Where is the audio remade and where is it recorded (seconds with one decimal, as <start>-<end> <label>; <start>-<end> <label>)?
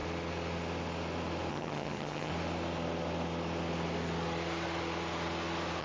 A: 0.0-1.5 recorded; 1.5-2.3 remade; 2.3-5.8 recorded